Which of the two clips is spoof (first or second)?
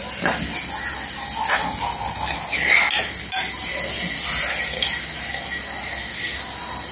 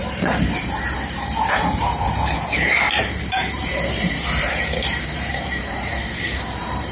second